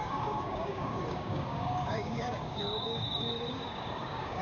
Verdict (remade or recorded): remade